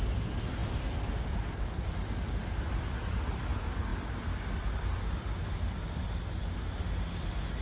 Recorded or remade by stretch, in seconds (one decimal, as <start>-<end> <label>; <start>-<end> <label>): 0.0-7.6 recorded